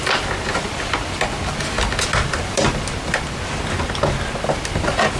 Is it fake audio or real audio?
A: real